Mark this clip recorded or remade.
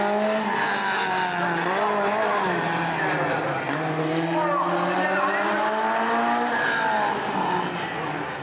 recorded